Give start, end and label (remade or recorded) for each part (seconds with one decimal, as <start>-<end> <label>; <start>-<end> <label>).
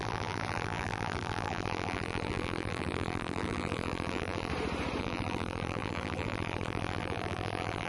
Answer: 0.0-4.5 remade; 4.5-5.0 recorded; 5.0-7.9 remade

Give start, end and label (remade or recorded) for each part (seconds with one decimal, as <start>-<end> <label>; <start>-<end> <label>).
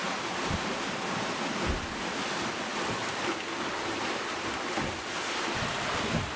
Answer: 0.0-6.4 recorded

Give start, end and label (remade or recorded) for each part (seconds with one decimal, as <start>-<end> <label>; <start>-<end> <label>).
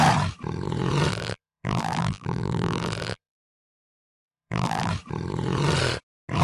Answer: 0.0-1.1 recorded; 1.1-4.9 remade; 4.9-6.4 recorded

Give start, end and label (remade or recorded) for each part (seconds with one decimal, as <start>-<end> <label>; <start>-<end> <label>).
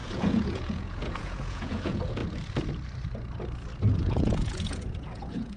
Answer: 0.0-2.2 remade; 2.2-4.0 recorded; 4.0-5.6 remade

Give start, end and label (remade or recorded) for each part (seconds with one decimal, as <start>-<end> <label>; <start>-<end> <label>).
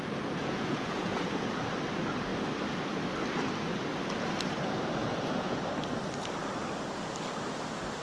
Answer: 0.0-0.4 recorded; 0.4-1.6 remade; 1.6-5.0 recorded; 5.0-5.6 remade; 5.6-8.0 recorded